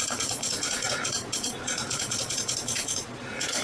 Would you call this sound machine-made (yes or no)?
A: yes